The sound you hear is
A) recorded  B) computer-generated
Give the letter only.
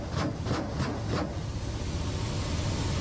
A